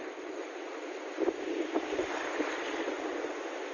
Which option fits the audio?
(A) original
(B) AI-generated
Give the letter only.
A